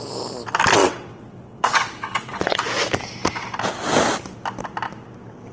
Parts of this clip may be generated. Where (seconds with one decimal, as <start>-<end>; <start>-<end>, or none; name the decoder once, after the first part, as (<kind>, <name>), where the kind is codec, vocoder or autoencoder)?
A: 0.8-2.6 (vocoder, WaveNeXt)